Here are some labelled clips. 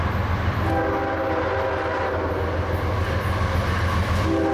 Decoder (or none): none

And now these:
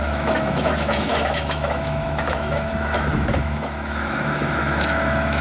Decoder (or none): autoencoder, DAC-VAE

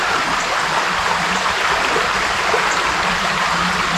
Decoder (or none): none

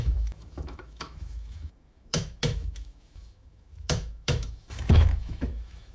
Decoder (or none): autoencoder, DAC-VAE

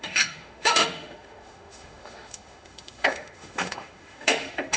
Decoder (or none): autoencoder, DAC-VAE